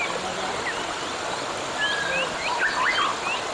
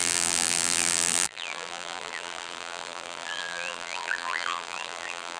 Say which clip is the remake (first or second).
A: second